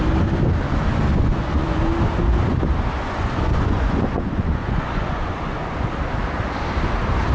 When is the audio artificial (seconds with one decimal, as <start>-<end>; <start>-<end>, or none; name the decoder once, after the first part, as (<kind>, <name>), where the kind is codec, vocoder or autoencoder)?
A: 1.1-1.8 (vocoder, Vocos); 3.0-5.9